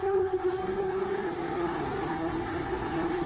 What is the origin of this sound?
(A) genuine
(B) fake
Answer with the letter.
B